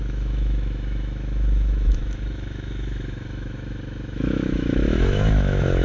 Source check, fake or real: fake